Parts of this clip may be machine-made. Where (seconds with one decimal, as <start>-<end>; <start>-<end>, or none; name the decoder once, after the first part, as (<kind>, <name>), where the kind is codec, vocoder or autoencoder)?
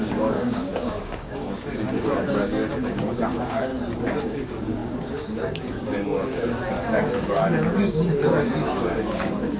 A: 0.0-3.7 (codec, DAC); 4.2-9.6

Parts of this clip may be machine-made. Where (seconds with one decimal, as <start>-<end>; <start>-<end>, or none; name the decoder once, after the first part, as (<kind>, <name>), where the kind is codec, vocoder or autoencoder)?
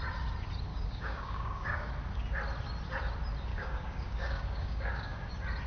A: 0.7-1.9 (codec, DAC); 3.5-5.3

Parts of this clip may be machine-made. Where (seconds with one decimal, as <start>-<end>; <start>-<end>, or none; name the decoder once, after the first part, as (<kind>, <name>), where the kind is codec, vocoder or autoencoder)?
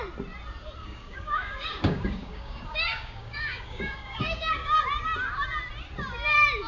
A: 0.8-4.8 (codec, DAC)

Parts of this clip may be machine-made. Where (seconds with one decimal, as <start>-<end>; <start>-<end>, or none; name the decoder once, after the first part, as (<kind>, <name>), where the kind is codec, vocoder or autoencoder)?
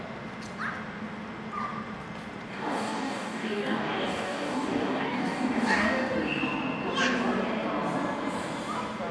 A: 2.5-6.4 (codec, DAC)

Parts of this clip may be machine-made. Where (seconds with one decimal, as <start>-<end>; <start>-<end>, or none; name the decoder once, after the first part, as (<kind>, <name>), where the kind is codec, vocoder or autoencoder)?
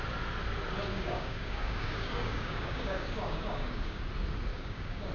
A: 0.9-4.0 (codec, DAC); 4.5-5.1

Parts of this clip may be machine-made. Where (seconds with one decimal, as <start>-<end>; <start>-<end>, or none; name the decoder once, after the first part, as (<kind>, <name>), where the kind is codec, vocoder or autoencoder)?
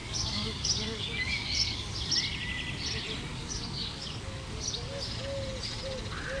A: 0.0-1.9 (codec, DAC); 3.3-4.9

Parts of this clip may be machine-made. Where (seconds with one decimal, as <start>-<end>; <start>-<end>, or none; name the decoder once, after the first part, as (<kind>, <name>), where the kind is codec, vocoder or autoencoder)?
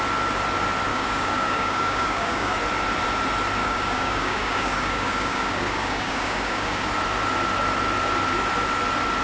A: 0.9-2.6 (codec, DAC); 3.6-6.9